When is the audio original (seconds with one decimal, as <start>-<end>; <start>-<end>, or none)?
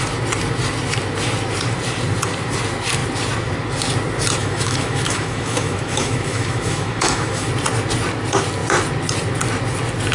0.0-4.4; 7.5-10.1